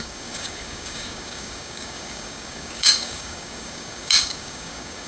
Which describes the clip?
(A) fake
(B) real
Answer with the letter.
A